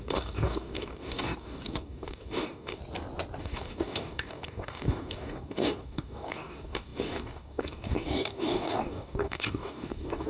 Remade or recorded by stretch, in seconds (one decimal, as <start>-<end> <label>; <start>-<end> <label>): 0.0-2.8 remade; 2.8-3.4 recorded; 3.4-10.3 remade